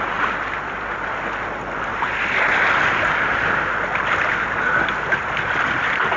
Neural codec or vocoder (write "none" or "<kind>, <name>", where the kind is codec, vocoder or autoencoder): none